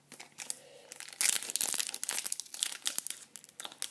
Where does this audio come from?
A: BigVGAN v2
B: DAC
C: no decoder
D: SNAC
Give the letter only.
C